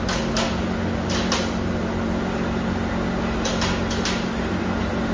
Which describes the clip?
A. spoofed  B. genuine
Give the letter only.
B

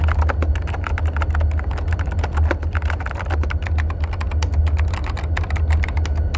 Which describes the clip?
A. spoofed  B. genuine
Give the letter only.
B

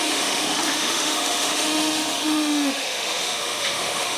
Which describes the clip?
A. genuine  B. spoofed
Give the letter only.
B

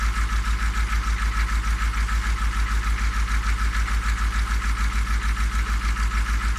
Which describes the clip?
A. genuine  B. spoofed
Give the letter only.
A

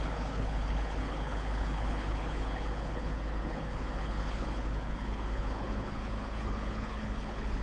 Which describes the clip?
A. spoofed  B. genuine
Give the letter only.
A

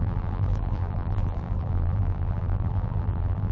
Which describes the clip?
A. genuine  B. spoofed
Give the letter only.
B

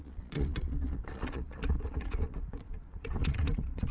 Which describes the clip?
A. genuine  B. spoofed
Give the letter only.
B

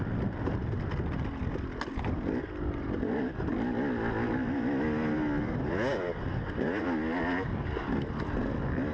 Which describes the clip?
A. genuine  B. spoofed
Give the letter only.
A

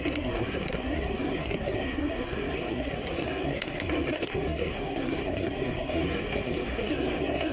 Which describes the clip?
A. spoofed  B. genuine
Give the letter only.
A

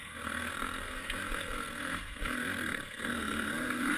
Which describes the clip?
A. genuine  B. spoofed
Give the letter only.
B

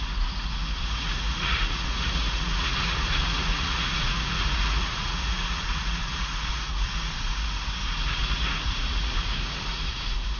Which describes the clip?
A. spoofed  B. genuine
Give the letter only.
A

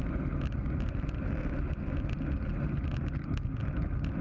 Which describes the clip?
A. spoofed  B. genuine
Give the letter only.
B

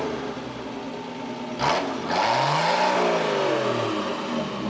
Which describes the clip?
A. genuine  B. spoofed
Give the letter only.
A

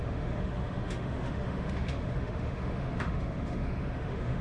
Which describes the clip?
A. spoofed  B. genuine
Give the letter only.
A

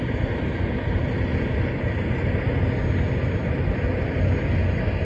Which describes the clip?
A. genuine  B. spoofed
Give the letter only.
A